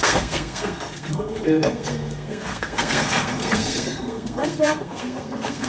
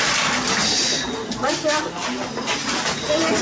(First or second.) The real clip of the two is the second